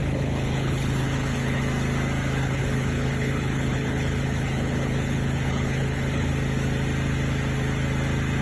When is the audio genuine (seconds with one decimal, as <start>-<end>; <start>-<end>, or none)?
1.6-2.4; 6.3-8.4